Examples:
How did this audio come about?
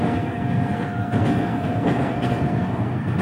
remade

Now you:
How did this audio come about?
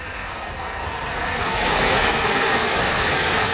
remade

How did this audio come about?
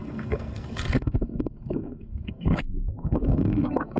remade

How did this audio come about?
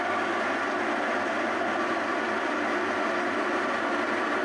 recorded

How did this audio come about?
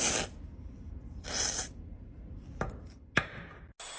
recorded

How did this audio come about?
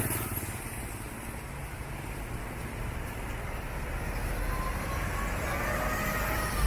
recorded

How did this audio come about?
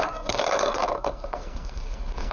remade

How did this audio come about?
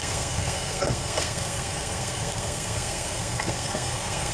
remade